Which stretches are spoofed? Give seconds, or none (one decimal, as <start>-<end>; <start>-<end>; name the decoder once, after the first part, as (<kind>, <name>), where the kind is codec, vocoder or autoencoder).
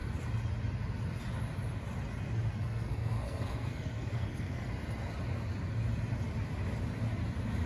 2.5-4.7 (codec, SNAC)